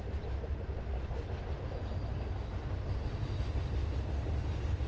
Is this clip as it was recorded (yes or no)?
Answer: yes